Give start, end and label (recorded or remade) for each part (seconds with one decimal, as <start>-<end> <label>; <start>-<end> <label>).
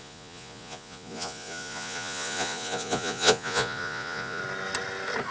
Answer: 0.0-4.4 remade; 4.4-5.3 recorded